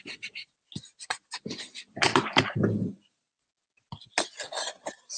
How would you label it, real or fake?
real